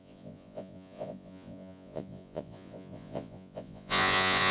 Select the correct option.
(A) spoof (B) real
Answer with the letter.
A